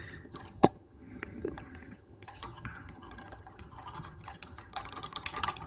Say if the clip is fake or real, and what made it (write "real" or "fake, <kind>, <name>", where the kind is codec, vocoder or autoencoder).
fake, vocoder, HiFi-GAN